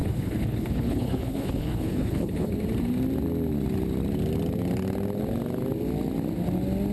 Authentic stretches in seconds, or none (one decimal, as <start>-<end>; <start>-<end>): 2.5-6.9